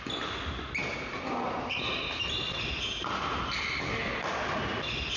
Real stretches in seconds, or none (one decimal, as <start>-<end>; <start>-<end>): 0.0-5.2